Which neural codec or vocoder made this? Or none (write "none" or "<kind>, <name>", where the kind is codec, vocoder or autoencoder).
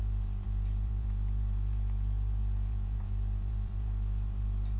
vocoder, BigVGAN v2